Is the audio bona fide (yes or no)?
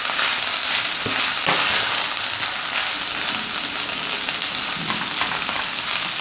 yes